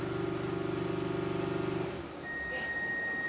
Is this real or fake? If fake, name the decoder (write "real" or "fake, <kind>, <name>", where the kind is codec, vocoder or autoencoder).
real